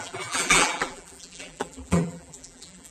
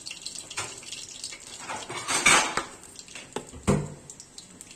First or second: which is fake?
first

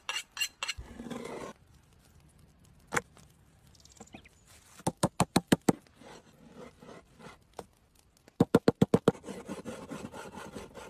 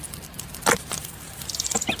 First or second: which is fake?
second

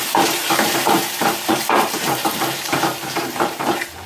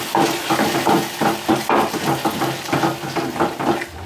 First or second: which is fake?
first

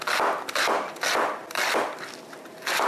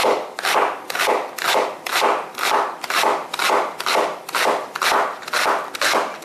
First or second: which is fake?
second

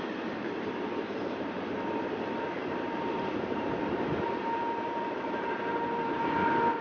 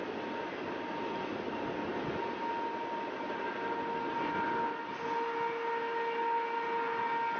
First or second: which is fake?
first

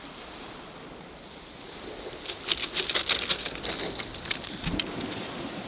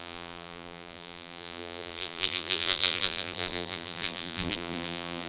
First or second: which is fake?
second